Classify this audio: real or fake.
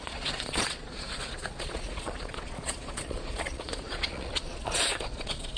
fake